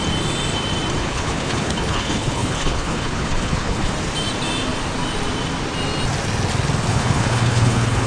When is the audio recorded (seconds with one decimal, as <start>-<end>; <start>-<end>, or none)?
0.0-1.0; 3.9-6.9